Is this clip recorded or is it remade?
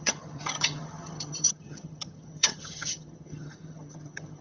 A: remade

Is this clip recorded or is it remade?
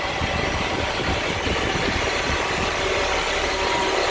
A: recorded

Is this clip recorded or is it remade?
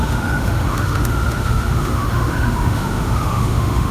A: remade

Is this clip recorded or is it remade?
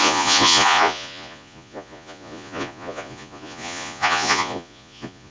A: remade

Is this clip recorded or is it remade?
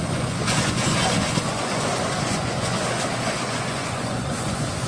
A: remade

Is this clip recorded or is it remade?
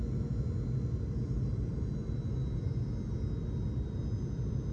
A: recorded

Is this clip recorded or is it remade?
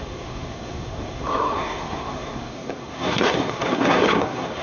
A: remade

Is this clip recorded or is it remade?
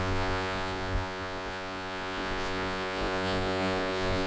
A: remade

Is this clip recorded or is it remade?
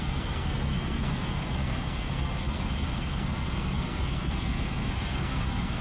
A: remade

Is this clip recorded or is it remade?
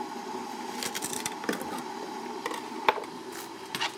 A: recorded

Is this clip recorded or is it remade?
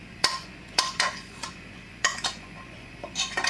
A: remade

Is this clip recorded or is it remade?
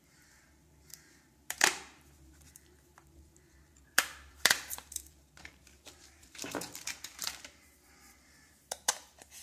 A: remade